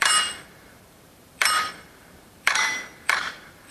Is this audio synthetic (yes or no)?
yes